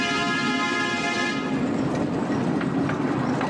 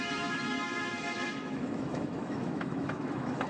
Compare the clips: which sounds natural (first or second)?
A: first